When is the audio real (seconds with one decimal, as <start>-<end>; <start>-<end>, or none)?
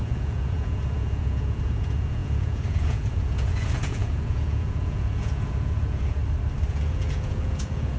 6.2-6.7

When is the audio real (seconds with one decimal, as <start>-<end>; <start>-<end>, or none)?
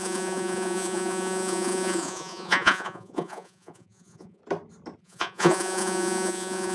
4.4-5.0